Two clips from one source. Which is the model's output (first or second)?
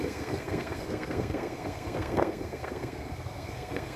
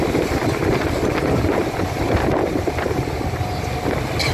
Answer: first